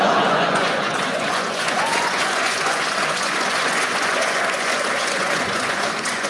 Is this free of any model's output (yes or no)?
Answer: no